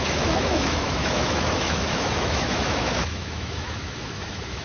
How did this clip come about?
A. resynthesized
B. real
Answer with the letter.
A